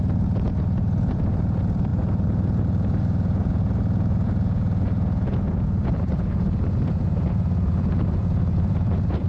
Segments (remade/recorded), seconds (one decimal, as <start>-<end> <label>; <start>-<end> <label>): 0.0-9.3 remade